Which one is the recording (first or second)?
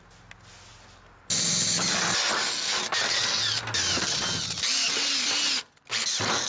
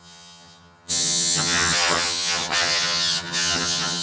first